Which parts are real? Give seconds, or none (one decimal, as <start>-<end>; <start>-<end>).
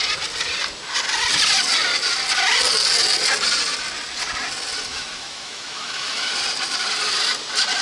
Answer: 0.0-4.9; 6.3-7.8